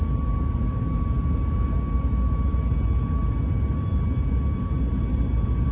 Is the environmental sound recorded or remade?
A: recorded